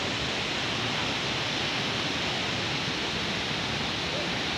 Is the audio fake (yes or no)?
no